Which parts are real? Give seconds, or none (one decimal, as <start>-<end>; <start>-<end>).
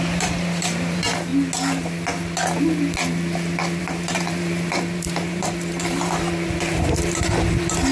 1.3-3.8